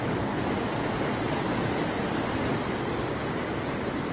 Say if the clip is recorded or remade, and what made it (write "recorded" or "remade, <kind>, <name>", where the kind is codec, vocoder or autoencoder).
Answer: recorded